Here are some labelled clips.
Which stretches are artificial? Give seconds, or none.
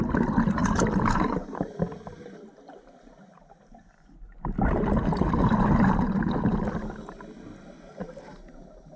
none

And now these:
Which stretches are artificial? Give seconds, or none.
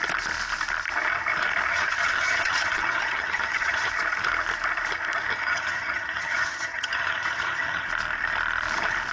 1.7-3.9 (vocoder, HiFi-GAN); 5.3-7.9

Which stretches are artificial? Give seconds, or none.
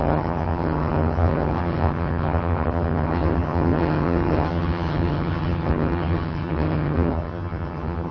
0.0-8.1 (vocoder, HiFi-GAN)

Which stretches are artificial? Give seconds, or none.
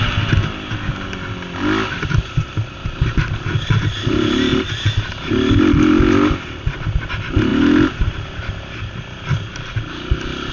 none